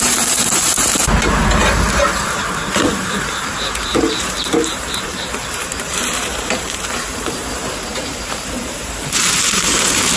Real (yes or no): no